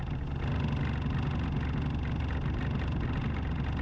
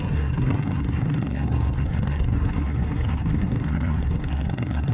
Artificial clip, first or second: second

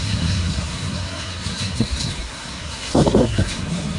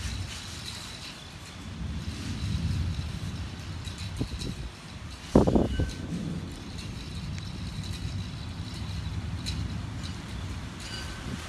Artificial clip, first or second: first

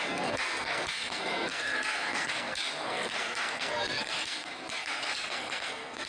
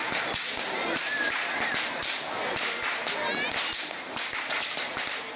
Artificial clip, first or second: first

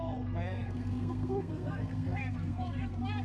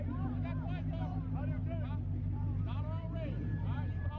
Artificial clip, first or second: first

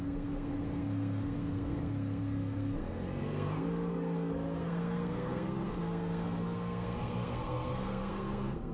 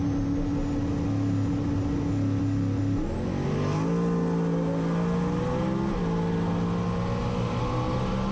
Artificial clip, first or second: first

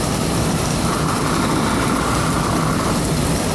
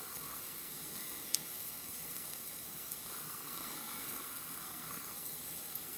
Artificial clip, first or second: second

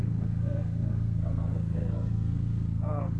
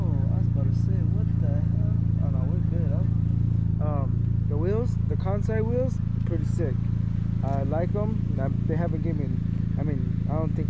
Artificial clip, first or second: first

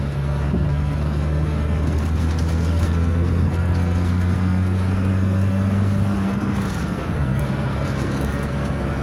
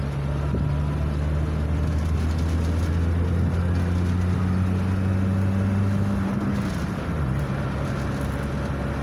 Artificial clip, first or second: first